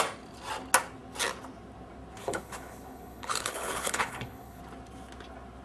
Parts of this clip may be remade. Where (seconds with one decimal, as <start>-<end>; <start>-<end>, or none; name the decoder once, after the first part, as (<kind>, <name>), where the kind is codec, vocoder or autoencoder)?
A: 2.2-4.6 (codec, HILCodec)